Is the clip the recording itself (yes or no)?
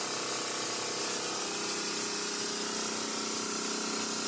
yes